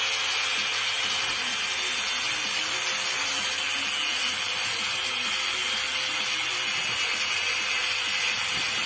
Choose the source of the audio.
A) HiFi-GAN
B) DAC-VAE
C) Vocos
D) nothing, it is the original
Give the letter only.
D